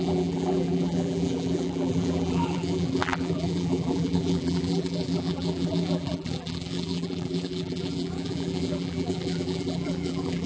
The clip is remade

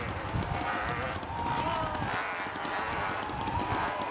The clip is recorded